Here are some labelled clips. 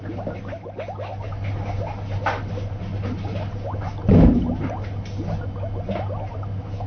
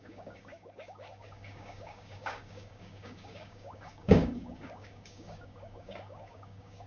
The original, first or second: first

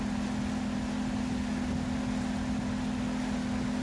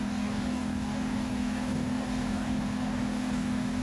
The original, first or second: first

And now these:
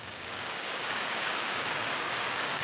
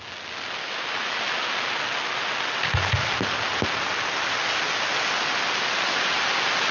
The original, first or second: second